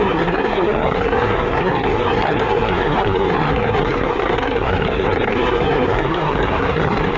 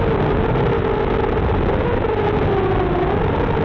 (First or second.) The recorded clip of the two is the second